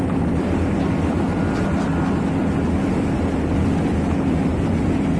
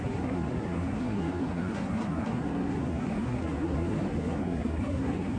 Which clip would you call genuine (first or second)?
first